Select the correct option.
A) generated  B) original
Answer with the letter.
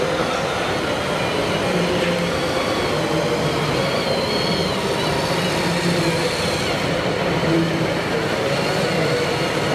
B